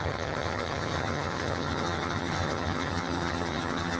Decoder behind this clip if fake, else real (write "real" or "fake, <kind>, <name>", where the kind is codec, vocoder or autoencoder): fake, vocoder, HiFi-GAN